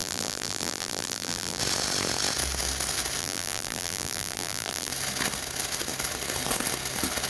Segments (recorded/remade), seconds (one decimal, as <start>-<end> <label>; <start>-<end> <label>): 0.0-1.6 remade; 1.6-3.2 recorded; 3.2-4.9 remade; 4.9-7.3 recorded